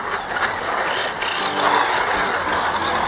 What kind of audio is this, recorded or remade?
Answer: recorded